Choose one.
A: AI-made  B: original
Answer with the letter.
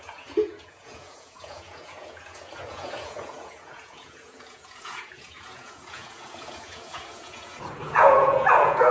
A